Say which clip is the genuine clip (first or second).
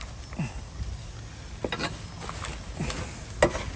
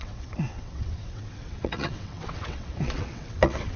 first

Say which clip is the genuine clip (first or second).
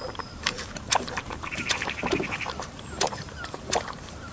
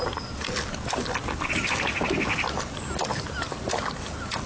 second